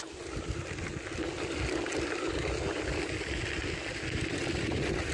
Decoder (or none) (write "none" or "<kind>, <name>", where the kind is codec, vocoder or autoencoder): none